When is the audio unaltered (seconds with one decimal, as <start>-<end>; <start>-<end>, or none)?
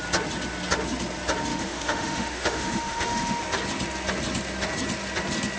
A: 0.0-1.5; 3.4-5.6